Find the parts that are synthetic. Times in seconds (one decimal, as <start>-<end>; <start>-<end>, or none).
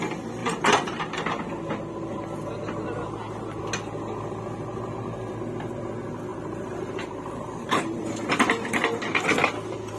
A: 0.4-1.0; 4.7-5.2; 6.3-8.1